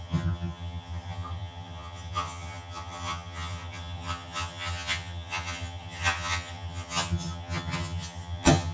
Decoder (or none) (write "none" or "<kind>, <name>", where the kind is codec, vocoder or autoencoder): vocoder, HiFi-GAN